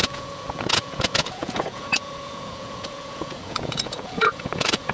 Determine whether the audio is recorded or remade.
remade